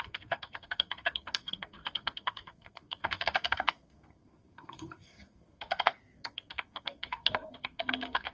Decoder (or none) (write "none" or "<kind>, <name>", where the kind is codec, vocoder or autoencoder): codec, SNAC